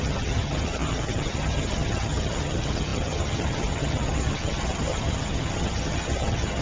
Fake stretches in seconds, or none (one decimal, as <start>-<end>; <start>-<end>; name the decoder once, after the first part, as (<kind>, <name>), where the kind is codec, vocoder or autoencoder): 0.0-6.6 (vocoder, HiFi-GAN)

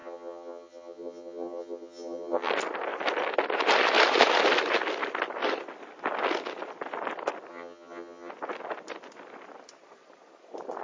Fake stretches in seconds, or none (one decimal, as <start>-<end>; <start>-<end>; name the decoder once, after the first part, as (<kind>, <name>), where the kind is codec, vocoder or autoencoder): 0.0-2.5 (vocoder, HiFi-GAN); 7.5-8.3

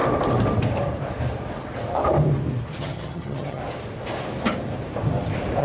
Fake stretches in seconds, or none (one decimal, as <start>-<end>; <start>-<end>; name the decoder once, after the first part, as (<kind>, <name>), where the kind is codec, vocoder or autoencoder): 2.8-3.6 (vocoder, HiFi-GAN)

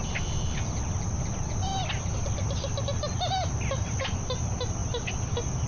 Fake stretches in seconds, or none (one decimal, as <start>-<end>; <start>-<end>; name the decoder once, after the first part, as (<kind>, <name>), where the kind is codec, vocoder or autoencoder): none

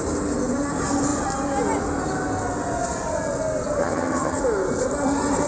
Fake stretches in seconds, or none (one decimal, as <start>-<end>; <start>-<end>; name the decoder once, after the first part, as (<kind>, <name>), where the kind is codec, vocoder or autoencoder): 3.8-4.4 (vocoder, HiFi-GAN)

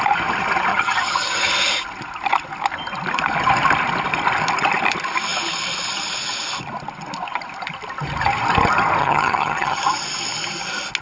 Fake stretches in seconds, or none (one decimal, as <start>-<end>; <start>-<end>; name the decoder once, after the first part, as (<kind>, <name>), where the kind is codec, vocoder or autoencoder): 0.7-1.5 (vocoder, HiFi-GAN); 9.0-9.8